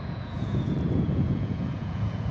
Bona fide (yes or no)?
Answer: no